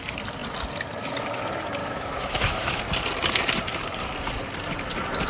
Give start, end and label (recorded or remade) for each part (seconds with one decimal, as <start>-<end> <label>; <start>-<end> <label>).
0.0-1.8 recorded; 1.8-2.8 remade; 2.8-5.3 recorded